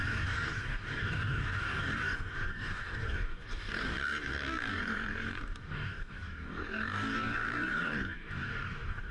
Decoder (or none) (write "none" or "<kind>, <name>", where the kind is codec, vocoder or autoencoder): codec, DAC